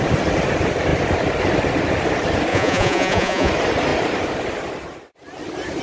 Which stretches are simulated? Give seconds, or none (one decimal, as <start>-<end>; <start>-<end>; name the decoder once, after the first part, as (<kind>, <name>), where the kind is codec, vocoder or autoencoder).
2.5-3.5 (vocoder, Vocos)